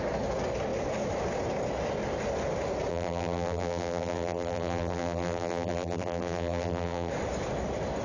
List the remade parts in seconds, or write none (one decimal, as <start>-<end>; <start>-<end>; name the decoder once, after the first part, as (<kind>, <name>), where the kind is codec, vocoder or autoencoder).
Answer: 2.9-7.1 (vocoder, BigVGAN v2)